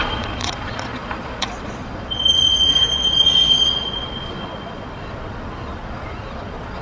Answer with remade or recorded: remade